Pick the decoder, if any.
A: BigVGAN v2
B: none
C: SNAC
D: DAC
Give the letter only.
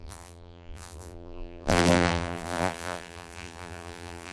A